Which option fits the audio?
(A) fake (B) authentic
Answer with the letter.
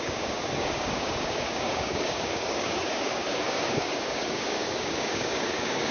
A